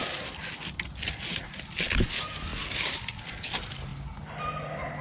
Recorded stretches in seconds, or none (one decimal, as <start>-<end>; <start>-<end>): 0.0-5.0